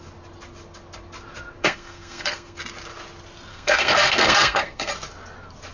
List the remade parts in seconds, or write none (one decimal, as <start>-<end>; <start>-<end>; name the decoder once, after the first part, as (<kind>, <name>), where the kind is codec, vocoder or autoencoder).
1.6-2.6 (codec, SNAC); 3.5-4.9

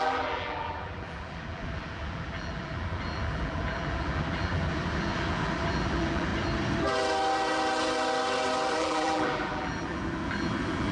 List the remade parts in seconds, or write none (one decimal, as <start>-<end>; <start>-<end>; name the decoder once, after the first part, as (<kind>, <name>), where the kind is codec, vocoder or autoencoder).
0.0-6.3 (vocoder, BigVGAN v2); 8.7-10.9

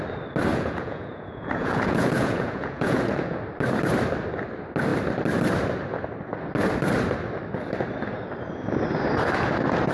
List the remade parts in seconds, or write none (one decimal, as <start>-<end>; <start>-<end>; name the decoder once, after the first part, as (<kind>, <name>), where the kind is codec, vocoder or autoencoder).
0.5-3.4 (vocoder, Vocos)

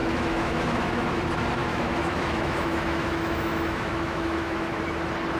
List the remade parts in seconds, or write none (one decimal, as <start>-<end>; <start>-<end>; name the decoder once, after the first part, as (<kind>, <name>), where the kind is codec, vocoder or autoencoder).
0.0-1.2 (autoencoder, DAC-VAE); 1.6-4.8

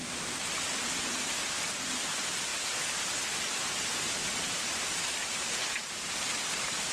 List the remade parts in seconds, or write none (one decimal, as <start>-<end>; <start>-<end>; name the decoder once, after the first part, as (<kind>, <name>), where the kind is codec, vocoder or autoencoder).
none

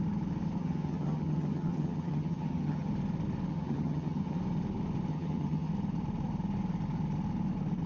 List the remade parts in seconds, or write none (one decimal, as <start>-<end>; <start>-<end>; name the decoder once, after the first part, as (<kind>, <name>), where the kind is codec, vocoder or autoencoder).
0.6-2.9 (vocoder, HiFi-GAN); 3.5-4.4; 5.1-5.7

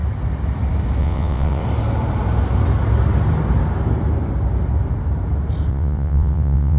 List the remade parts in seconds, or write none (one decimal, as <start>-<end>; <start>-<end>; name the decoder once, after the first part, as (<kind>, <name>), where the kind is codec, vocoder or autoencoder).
1.0-1.6 (vocoder, WaveNeXt); 5.7-6.8

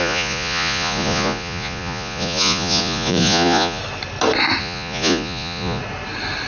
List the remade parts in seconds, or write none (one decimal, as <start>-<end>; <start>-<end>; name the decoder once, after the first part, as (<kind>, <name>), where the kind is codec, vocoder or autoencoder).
0.0-3.8 (vocoder, Vocos); 4.6-5.8